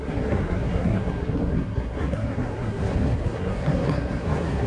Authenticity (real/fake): fake